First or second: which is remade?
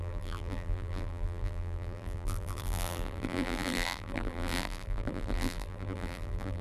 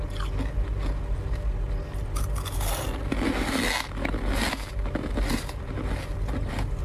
first